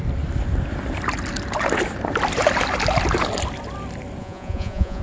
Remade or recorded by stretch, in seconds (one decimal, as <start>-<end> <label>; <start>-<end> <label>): 0.0-4.2 recorded; 4.2-5.0 remade